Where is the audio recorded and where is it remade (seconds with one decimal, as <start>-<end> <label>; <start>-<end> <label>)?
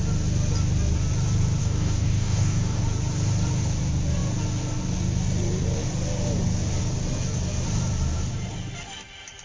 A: 0.0-1.6 recorded; 1.6-2.8 remade; 2.8-9.4 recorded